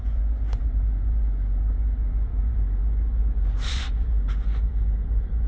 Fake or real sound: fake